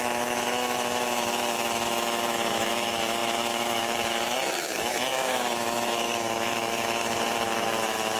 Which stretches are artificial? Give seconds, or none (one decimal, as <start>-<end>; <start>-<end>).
0.0-8.2

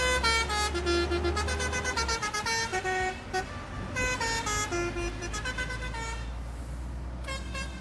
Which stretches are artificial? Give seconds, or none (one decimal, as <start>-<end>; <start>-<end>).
2.7-3.3

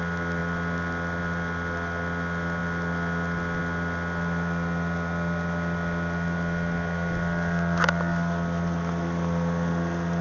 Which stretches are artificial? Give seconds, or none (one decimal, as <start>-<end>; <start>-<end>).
none

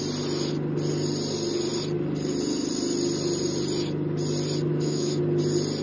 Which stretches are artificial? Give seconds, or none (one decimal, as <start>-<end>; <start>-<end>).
4.7-5.2

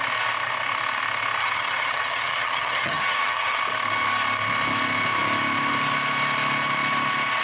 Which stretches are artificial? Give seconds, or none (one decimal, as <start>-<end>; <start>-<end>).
1.4-3.6

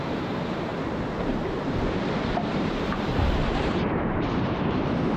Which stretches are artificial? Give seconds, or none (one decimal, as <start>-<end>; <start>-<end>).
0.0-0.7; 2.5-5.2

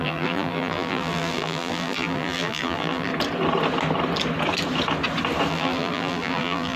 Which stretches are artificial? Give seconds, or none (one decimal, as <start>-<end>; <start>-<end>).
0.0-3.1; 5.5-6.8